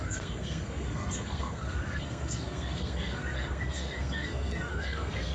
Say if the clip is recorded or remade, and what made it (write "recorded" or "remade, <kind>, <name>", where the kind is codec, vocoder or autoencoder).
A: remade, codec, SNAC